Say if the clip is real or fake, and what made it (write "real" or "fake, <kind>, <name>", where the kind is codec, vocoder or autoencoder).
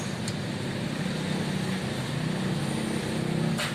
real